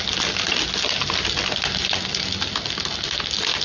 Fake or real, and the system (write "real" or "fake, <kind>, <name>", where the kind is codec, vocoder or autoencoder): real